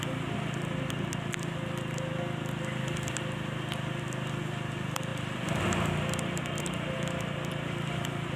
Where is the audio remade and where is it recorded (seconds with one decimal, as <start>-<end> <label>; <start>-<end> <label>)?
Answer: 0.0-8.4 recorded